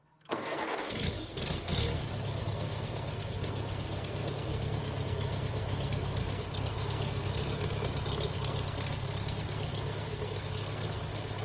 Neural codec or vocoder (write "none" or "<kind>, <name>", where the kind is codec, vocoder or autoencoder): codec, SNAC